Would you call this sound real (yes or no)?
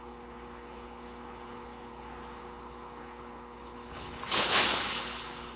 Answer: no